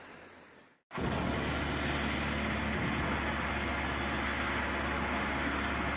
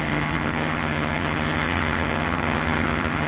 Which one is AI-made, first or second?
second